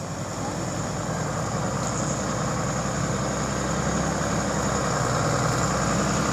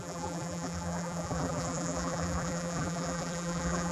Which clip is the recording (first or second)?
first